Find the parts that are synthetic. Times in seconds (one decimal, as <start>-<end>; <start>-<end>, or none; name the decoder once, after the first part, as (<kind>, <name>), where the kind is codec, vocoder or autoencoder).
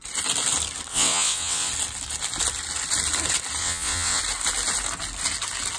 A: 0.9-1.7 (vocoder, WaveNeXt); 3.6-4.2